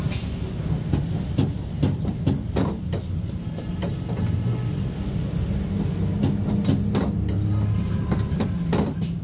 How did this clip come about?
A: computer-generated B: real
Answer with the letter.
B